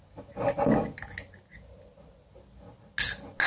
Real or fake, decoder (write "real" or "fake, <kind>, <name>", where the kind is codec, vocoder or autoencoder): real